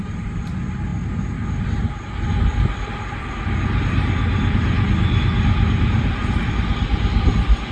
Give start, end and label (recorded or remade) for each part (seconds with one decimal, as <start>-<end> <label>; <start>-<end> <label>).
0.0-2.5 recorded; 2.5-3.6 remade; 3.6-6.2 recorded; 6.2-6.7 remade; 6.7-7.7 recorded

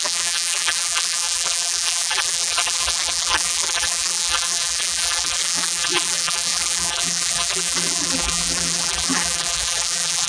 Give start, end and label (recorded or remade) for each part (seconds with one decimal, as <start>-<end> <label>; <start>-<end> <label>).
0.0-10.3 remade

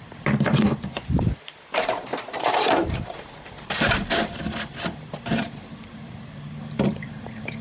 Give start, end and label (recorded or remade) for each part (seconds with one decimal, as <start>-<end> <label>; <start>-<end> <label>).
0.0-2.1 remade; 2.1-2.7 recorded; 2.7-7.6 remade

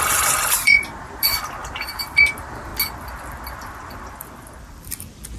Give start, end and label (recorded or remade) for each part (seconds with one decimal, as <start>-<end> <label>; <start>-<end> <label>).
0.0-2.7 remade; 2.7-3.9 recorded; 3.9-5.4 remade

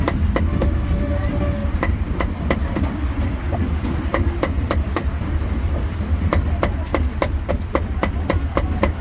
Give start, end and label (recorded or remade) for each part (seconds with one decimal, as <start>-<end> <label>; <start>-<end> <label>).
0.0-1.6 recorded; 1.6-5.7 remade; 5.7-6.9 recorded; 6.9-7.5 remade; 7.5-9.0 recorded

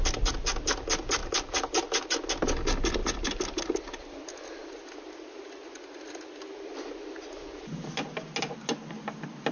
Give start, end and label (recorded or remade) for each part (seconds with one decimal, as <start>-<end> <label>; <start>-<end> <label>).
0.0-1.2 recorded; 1.2-2.1 remade; 2.1-9.5 recorded

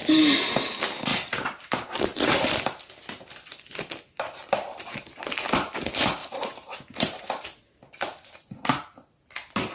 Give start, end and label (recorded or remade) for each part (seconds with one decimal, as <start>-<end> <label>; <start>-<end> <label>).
0.0-1.1 recorded; 1.1-2.9 remade; 2.9-6.2 recorded; 6.2-7.3 remade; 7.3-9.7 recorded

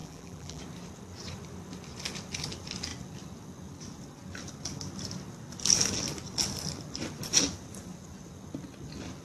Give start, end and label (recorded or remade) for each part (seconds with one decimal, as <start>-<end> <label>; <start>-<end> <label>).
0.0-0.6 remade; 0.6-9.2 recorded